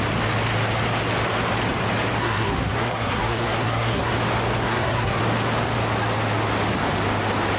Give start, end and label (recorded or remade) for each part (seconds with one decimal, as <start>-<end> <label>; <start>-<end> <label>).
0.0-2.2 recorded; 2.2-4.1 remade; 4.1-4.6 recorded; 4.6-5.2 remade; 5.2-7.6 recorded